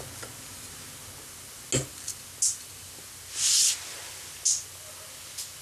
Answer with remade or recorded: recorded